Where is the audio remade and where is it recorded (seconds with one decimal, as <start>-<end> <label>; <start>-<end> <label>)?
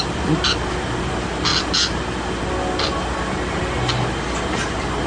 0.0-5.1 recorded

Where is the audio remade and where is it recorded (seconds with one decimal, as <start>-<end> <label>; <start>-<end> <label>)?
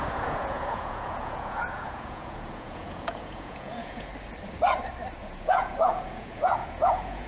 0.0-4.1 remade; 4.1-5.2 recorded; 5.2-7.3 remade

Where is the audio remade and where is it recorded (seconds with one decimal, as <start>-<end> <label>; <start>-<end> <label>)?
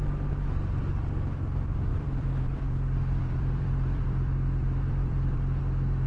0.0-1.9 recorded; 1.9-5.6 remade; 5.6-6.1 recorded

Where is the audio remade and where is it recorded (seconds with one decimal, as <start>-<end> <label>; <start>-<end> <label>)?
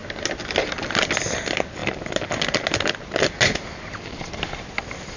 0.0-5.2 recorded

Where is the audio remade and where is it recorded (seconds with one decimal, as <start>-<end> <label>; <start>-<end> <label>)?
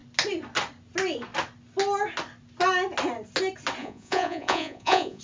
0.0-3.8 recorded; 3.8-5.2 remade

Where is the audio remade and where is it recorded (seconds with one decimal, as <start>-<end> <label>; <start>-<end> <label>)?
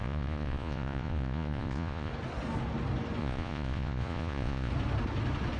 0.0-2.1 remade; 2.1-3.2 recorded; 3.2-4.7 remade; 4.7-5.6 recorded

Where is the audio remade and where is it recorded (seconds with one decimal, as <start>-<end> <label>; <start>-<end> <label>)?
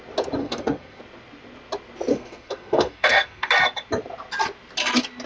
0.0-0.4 recorded; 0.4-1.0 remade; 1.0-2.1 recorded; 2.1-3.5 remade; 3.5-5.3 recorded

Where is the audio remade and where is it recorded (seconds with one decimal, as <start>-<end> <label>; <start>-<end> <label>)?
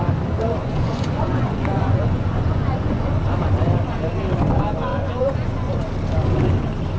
0.0-0.6 recorded; 0.6-3.1 remade; 3.1-4.9 recorded; 4.9-5.7 remade; 5.7-7.0 recorded